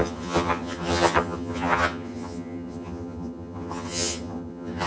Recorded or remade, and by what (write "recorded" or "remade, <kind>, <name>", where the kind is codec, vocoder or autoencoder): remade, vocoder, HiFi-GAN